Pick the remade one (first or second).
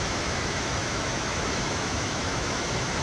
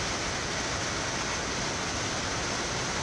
first